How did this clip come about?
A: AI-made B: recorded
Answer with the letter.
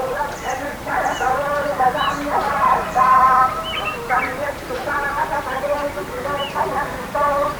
A